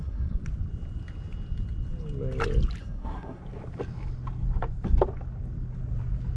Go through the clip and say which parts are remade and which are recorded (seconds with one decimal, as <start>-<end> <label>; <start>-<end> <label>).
0.0-0.4 remade; 0.4-2.8 recorded; 2.8-3.4 remade; 3.4-6.4 recorded